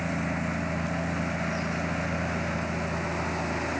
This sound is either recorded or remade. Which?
recorded